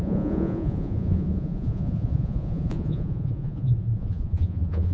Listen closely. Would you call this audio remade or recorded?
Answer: remade